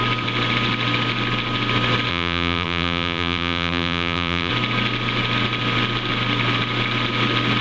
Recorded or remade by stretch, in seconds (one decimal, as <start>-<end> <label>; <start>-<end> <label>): 0.0-2.1 recorded; 2.1-4.5 remade; 4.5-7.6 recorded